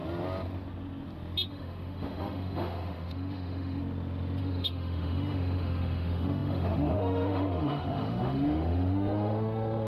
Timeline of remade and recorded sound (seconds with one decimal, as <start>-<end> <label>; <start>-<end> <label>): 0.0-1.5 recorded; 1.5-3.8 remade; 3.8-4.4 recorded; 4.4-9.9 remade